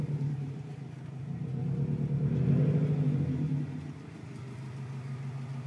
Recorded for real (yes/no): yes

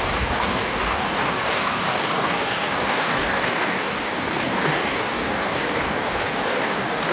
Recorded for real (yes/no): no